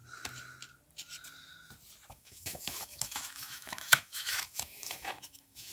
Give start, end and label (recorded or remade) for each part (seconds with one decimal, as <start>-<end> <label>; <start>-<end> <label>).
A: 0.0-2.1 recorded; 2.1-5.7 remade